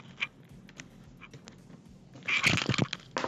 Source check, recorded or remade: recorded